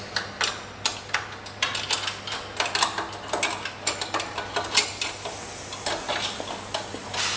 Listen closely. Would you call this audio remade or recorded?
recorded